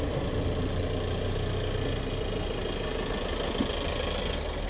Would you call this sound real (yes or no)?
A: yes